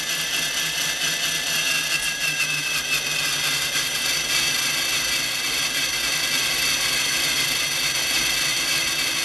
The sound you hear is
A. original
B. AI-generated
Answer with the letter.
A